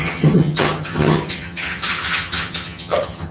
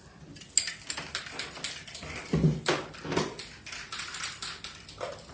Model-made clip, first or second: first